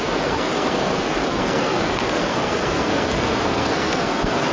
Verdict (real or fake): fake